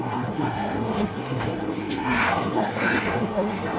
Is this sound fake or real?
fake